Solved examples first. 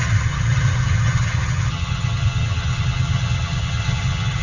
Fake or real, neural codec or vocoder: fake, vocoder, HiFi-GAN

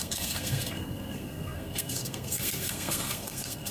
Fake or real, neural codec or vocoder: fake, codec, SNAC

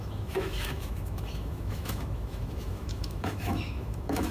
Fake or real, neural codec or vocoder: fake, autoencoder, DAC-VAE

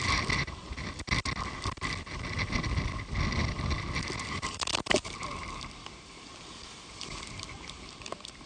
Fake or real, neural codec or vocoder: real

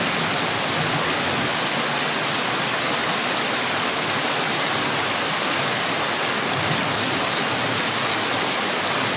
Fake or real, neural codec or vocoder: real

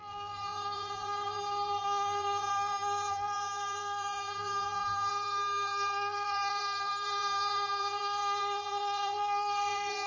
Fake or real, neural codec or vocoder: fake, vocoder, BigVGAN v2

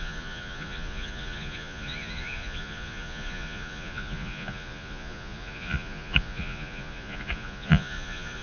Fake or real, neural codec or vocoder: fake, vocoder, Vocos